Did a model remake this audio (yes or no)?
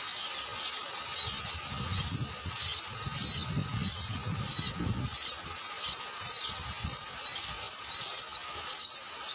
no